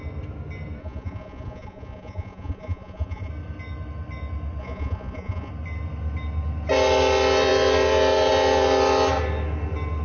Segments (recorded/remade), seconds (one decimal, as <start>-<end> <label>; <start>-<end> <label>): 0.0-0.8 recorded; 0.8-3.3 remade; 3.3-4.6 recorded; 4.6-5.5 remade; 5.5-10.0 recorded